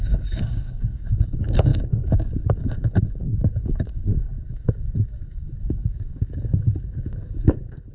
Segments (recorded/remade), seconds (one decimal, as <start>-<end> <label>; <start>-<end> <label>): 0.0-7.9 remade